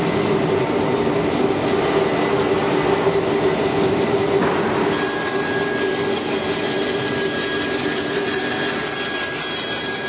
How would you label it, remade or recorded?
recorded